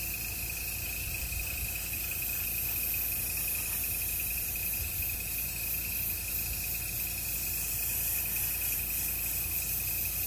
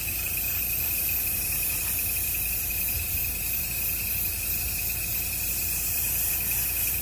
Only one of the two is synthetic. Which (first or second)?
second